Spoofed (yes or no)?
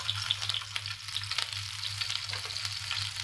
no